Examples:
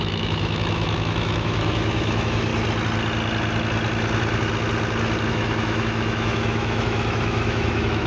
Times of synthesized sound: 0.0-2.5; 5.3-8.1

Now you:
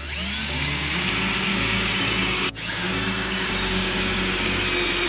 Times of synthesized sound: 0.4-1.1; 1.5-4.6

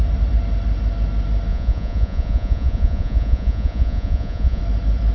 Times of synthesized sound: 1.5-4.6